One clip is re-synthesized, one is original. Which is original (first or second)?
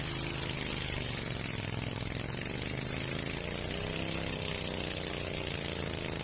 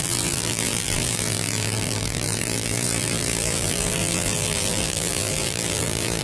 first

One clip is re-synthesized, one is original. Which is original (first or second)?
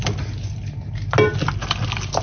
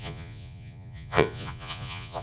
first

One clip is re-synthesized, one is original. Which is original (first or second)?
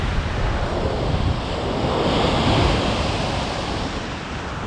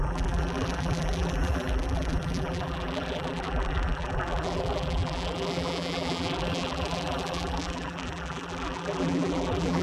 first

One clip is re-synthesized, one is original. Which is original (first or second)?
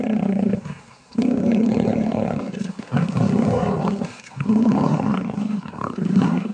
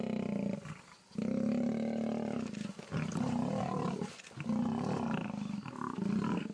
second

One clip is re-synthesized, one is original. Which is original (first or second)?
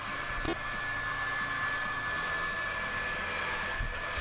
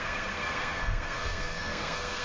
first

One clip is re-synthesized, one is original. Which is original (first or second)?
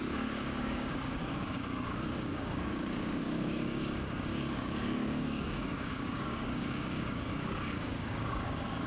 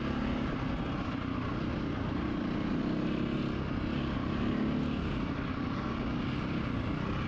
second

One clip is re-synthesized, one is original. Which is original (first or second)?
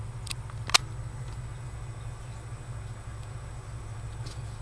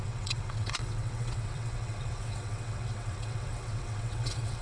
first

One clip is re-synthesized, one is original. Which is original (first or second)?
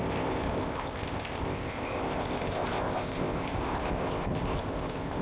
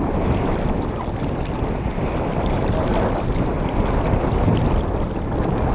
second